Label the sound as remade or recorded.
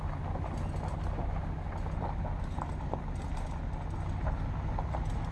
recorded